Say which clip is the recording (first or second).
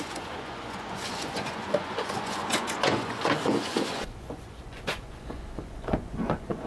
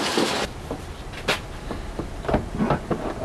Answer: second